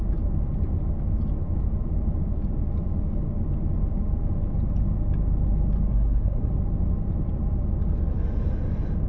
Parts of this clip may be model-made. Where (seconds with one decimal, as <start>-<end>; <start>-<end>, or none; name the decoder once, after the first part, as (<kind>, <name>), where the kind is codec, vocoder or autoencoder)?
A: 5.9-6.5 (codec, SNAC)